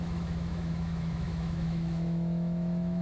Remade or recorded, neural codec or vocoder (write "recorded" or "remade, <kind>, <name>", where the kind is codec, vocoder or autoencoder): remade, autoencoder, DAC-VAE